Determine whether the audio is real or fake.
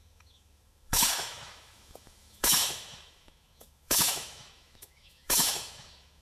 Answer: fake